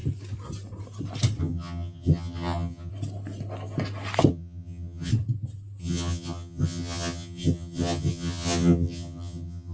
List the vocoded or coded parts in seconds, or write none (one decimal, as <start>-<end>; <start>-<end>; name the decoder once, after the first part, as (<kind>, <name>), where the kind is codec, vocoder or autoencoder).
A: 1.4-2.9 (vocoder, HiFi-GAN); 4.3-5.1; 5.8-9.7